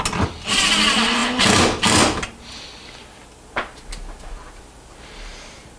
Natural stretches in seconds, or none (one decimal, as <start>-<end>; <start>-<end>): 0.0-5.8